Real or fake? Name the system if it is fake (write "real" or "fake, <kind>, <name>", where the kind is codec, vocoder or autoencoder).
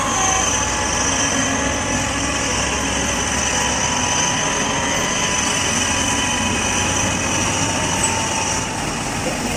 real